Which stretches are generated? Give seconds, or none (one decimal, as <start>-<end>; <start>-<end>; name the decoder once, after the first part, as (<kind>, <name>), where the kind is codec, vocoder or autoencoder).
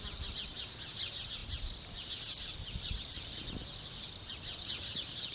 1.4-2.1 (vocoder, BigVGAN v2)